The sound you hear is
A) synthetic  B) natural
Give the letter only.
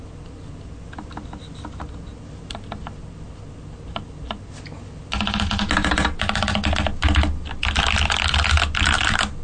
B